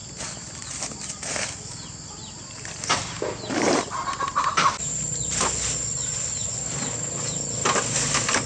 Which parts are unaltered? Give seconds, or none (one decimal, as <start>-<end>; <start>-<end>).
0.0-8.5